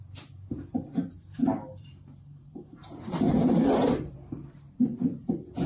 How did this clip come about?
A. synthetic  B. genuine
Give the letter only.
A